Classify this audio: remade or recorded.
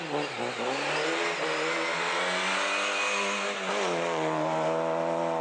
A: recorded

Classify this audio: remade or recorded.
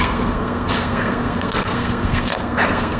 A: remade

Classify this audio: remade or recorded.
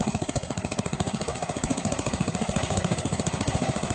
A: remade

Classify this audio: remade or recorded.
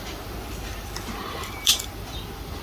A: recorded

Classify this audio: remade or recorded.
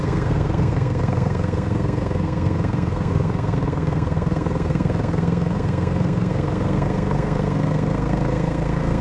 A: remade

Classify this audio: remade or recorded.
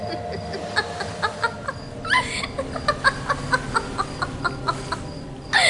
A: recorded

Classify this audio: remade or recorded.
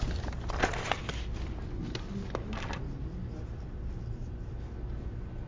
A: recorded